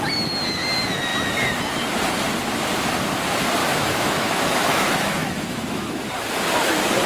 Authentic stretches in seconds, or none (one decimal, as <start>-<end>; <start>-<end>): 0.0-3.6; 6.1-7.1